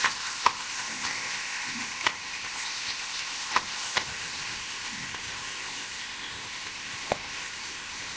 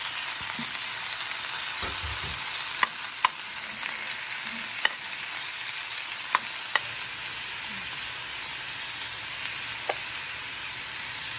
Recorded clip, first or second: second